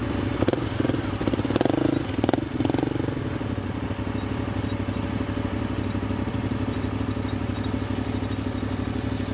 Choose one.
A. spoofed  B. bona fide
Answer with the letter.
B